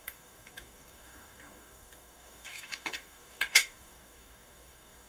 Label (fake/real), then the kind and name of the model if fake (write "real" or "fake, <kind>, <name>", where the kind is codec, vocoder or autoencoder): fake, codec, DAC